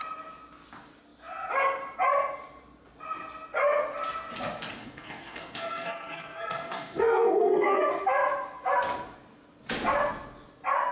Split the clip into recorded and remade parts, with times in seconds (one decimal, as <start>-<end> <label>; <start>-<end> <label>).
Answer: 0.0-4.8 recorded; 4.8-7.9 remade; 7.9-10.9 recorded